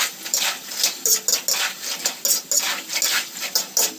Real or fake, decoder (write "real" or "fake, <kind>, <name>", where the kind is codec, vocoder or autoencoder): real